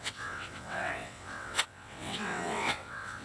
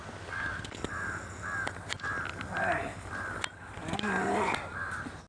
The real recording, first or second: second